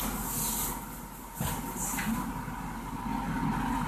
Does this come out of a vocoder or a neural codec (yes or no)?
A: no